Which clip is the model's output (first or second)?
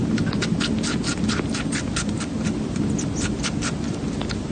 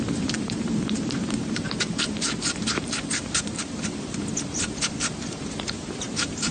second